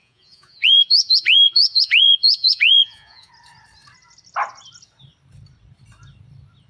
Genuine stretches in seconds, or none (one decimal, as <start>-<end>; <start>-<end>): 3.3-6.7